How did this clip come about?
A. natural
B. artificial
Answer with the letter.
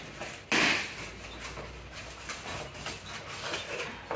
A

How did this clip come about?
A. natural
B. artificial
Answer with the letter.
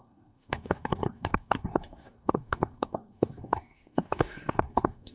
B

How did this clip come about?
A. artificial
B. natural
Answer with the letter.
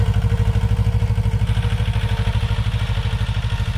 B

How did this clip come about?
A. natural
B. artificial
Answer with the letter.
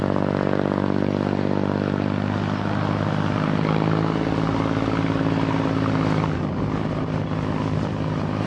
A